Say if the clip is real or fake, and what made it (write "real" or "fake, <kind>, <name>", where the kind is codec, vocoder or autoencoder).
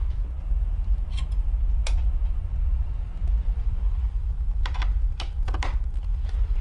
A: fake, vocoder, BigVGAN v2